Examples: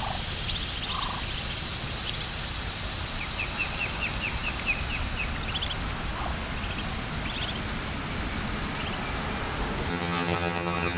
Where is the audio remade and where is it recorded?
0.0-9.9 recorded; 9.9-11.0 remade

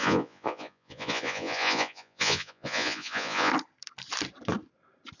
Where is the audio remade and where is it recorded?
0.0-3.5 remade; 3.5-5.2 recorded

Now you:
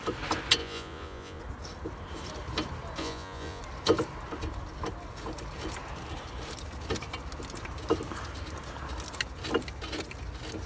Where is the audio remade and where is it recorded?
0.0-0.6 recorded; 0.6-1.4 remade; 1.4-3.0 recorded; 3.0-3.6 remade; 3.6-10.7 recorded

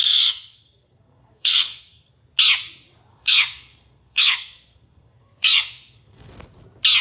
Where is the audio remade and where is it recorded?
0.0-2.1 remade; 2.1-3.1 recorded; 3.1-6.3 remade; 6.3-7.0 recorded

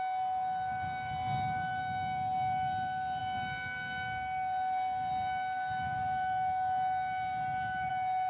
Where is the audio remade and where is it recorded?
0.0-8.3 recorded

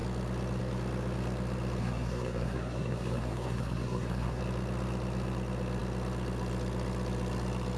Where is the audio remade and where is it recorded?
0.0-1.8 recorded; 1.8-4.4 remade; 4.4-7.8 recorded

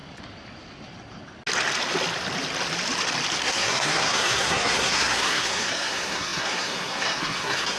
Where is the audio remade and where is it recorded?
0.0-3.4 recorded; 3.4-7.8 remade